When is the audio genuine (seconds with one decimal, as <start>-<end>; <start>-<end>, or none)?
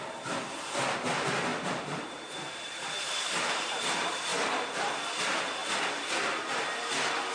0.0-1.5; 3.8-7.3